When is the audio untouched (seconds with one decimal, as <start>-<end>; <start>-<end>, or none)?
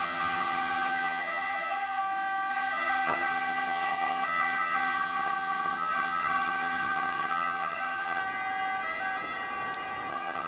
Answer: 2.0-2.5; 8.2-10.1